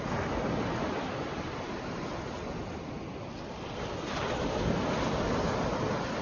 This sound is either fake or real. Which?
real